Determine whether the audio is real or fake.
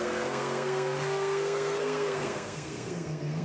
fake